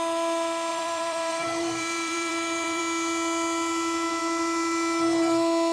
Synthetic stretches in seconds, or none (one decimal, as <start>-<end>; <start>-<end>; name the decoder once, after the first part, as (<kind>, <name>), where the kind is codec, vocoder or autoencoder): 0.7-2.8 (vocoder, BigVGAN v2)